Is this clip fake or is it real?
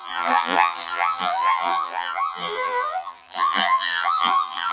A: fake